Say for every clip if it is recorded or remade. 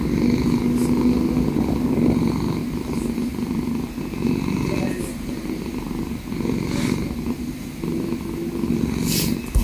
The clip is recorded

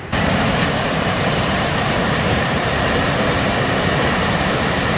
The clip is remade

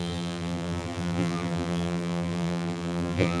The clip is remade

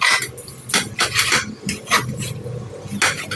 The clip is recorded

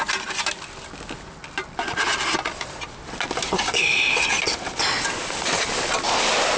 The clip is recorded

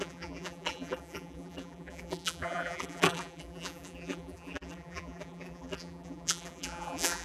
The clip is remade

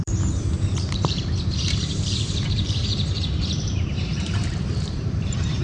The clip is remade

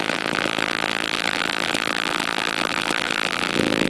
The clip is remade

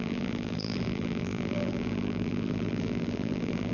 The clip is remade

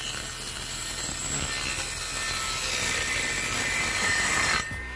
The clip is recorded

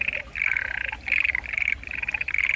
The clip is recorded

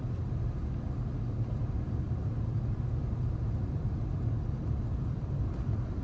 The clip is remade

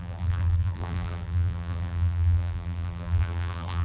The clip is remade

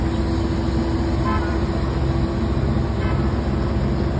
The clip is recorded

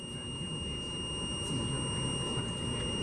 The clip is recorded